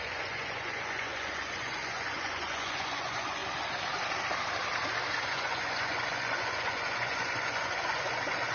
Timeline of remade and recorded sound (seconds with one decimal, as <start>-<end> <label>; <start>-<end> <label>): 0.0-3.4 remade; 3.4-5.2 recorded; 5.2-8.5 remade